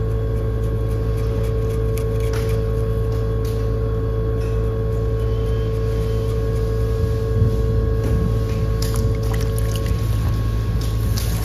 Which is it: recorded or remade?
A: recorded